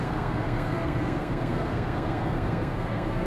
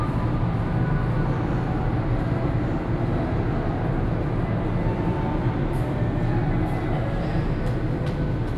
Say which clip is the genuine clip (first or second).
second